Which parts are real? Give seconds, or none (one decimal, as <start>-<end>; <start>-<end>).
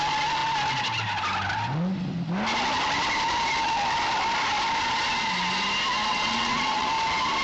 0.0-6.1; 6.9-7.4